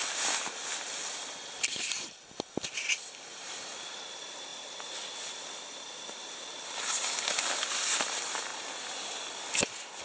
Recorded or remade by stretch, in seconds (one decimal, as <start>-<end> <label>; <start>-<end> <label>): 0.0-10.0 recorded